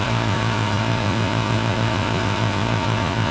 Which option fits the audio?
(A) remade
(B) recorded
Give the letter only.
A